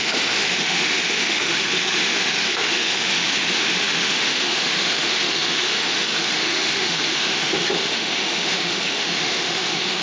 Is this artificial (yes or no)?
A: yes